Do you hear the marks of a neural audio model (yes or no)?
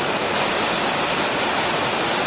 no